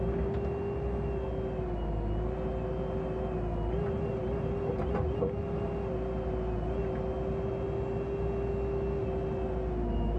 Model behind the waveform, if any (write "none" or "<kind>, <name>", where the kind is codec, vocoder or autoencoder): none